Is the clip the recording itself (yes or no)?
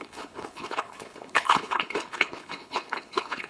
no